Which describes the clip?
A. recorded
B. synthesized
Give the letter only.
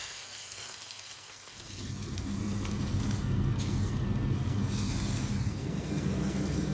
B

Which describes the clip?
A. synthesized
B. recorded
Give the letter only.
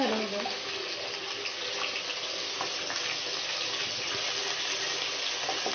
B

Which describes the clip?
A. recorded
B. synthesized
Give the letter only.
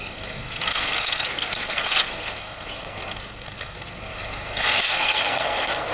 B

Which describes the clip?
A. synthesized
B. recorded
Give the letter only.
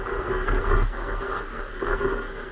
A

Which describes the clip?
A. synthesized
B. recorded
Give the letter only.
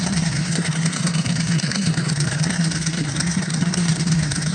A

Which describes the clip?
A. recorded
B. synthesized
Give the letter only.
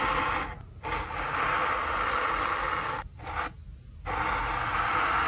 A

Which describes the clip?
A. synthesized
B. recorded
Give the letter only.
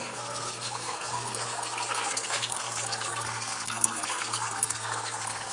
A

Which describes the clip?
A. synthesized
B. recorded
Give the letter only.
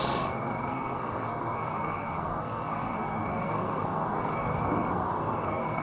A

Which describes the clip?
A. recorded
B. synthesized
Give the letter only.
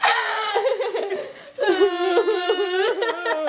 A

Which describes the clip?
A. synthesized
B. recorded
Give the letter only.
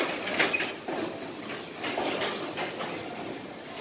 B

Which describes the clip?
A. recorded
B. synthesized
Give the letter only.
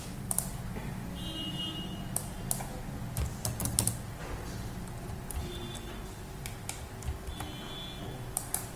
A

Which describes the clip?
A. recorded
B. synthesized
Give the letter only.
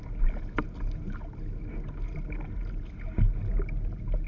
A